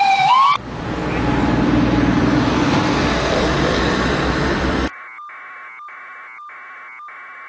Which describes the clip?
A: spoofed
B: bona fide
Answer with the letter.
B